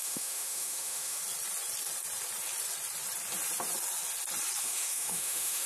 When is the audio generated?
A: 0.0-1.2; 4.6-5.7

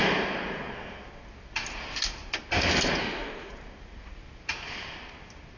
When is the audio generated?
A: 3.0-3.5

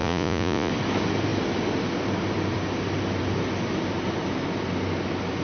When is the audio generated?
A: 0.0-0.7

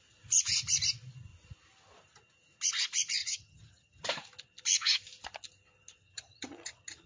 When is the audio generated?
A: 3.2-4.0; 6.0-7.1

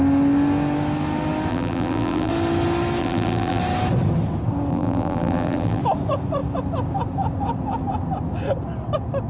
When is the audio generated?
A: 1.5-2.3; 3.0-3.6; 4.7-5.8

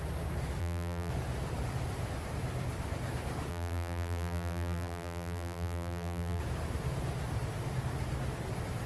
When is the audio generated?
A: 0.6-1.1; 3.5-6.4